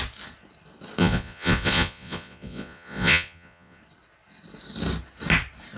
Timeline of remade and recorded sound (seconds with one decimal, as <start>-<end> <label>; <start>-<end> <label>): 0.0-1.0 recorded; 1.0-3.8 remade; 3.8-5.8 recorded